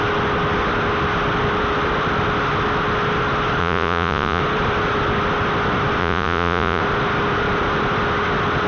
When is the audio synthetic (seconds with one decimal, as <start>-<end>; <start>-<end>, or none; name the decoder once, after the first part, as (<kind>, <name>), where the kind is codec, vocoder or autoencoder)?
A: 3.6-4.4 (vocoder, Vocos); 6.0-6.8